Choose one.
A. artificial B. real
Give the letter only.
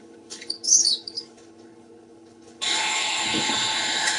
A